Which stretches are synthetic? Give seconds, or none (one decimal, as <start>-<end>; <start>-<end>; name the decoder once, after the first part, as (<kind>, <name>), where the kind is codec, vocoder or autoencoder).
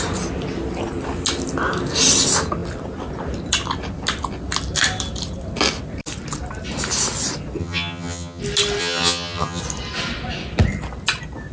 7.6-8.4 (vocoder, HiFi-GAN); 8.8-9.6